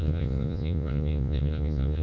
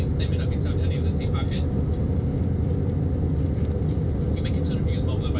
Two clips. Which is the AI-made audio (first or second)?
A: first